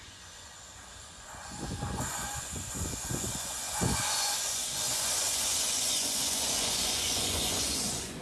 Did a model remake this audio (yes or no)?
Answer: yes